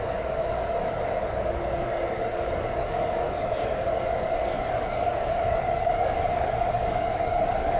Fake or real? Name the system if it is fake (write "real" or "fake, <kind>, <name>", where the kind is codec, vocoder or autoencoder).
fake, codec, DAC